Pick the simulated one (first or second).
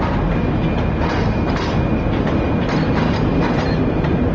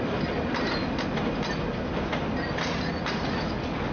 first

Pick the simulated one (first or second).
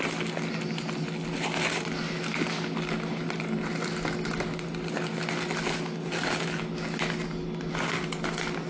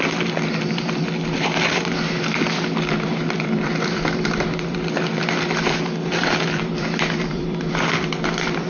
second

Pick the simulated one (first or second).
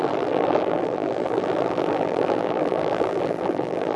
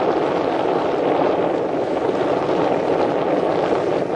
first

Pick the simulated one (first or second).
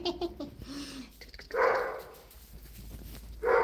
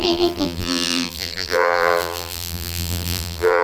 second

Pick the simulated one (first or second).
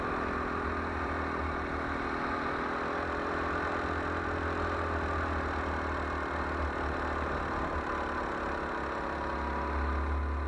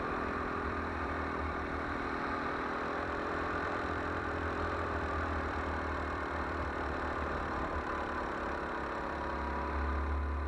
second